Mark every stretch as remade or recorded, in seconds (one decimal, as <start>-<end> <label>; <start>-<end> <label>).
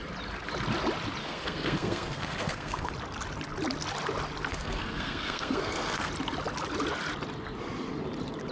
0.0-1.2 recorded; 1.2-2.9 remade; 2.9-4.5 recorded; 4.5-6.1 remade; 6.1-8.5 recorded